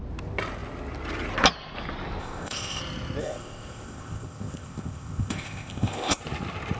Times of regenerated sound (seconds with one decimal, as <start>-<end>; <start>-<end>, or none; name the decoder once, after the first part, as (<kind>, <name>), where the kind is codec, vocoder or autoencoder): 2.2-2.8 (codec, ZipCodec); 3.2-6.2